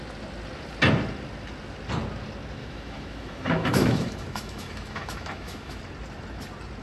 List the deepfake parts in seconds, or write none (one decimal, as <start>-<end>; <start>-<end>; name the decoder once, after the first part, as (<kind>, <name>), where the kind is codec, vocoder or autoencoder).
2.6-5.8 (autoencoder, DAC-VAE)